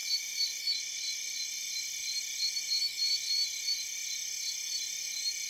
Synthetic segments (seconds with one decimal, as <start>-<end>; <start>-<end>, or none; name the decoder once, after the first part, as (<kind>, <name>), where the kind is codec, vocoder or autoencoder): 0.0-0.6 (vocoder, BigVGAN v2)